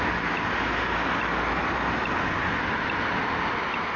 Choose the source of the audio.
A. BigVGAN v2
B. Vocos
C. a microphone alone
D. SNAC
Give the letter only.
C